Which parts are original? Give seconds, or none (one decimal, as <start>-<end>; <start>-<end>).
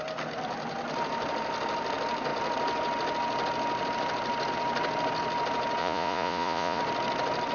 0.0-5.8; 6.8-7.5